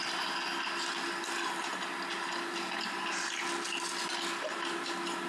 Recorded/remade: recorded